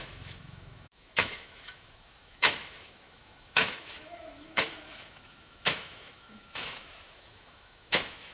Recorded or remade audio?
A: remade